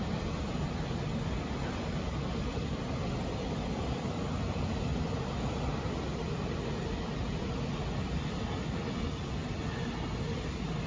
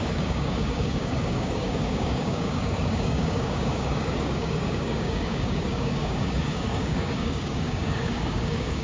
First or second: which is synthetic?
second